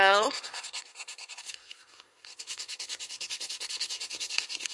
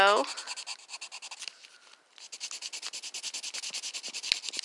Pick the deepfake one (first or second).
first